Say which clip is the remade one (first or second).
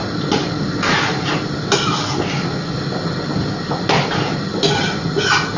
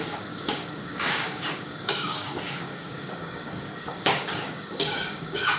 second